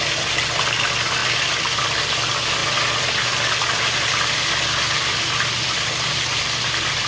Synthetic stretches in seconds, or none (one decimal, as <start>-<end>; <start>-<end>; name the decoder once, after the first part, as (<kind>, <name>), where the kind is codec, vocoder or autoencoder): 0.0-2.6 (vocoder, BigVGAN v2); 6.1-7.1

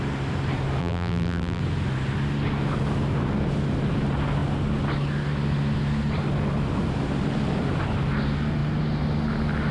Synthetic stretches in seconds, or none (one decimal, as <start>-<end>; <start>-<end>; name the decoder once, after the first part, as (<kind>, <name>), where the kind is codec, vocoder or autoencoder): 0.8-1.6 (vocoder, BigVGAN v2)

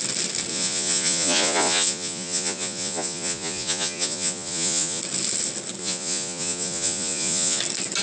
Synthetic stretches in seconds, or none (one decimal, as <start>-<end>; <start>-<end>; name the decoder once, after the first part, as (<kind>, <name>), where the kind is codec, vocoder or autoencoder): 0.5-5.0 (vocoder, Vocos); 5.8-7.6